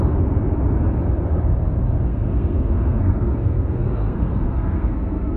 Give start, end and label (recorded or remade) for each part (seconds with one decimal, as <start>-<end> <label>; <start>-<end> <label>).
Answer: 0.0-2.1 recorded; 2.1-5.4 remade